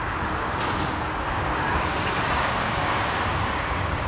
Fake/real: fake